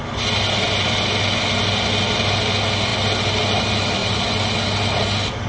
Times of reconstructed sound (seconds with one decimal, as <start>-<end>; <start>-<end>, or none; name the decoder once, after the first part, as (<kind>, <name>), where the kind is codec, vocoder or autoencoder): none